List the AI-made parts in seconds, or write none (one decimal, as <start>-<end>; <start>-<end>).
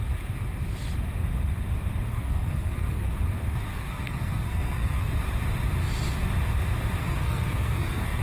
2.1-3.1; 3.7-5.1; 7.0-8.2